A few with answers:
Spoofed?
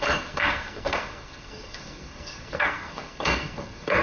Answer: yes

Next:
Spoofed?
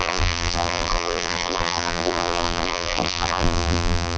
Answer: yes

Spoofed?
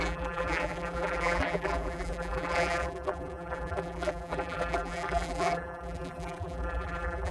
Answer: yes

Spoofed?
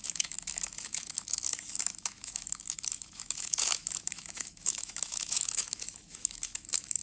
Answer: yes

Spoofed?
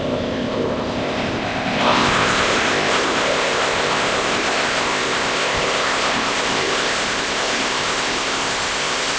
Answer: yes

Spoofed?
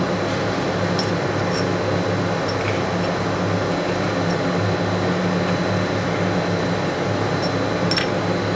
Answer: no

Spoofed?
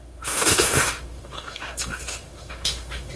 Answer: yes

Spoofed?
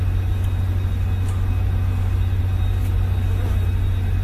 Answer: no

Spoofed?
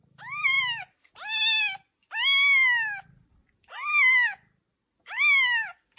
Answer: no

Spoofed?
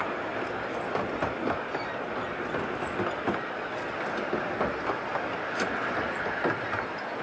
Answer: no